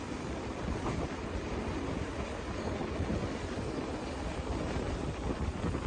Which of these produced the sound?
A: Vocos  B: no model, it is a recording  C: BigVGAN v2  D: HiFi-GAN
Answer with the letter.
B